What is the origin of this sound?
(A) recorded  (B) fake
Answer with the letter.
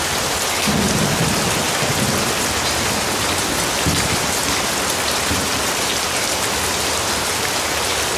A